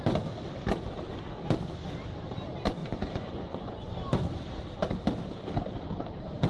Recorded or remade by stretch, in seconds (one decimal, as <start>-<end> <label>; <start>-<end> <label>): 0.0-2.8 recorded; 2.8-3.9 remade; 3.9-6.5 recorded